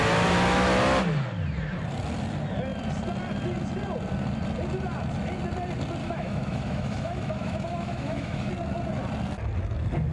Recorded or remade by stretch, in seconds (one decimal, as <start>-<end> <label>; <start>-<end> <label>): 0.0-6.0 recorded; 6.0-8.5 remade; 8.5-10.1 recorded